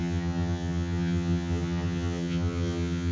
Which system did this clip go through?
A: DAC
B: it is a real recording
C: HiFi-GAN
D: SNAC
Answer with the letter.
C